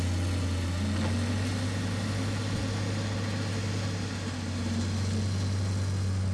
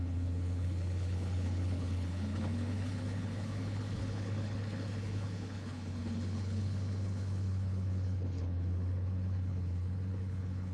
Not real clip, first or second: second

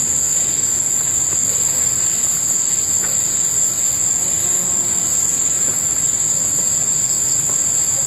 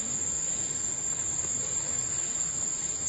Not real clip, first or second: second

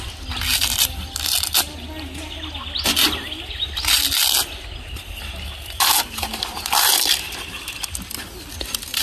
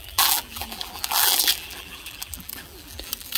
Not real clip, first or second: second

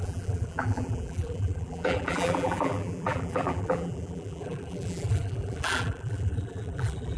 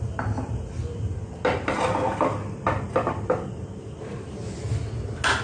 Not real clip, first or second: first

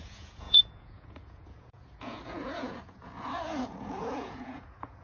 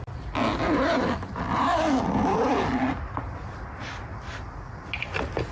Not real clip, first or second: first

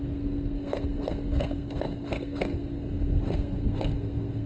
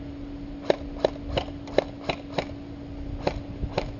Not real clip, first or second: first